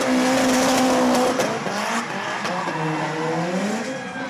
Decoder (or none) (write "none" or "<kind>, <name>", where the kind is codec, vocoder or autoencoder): none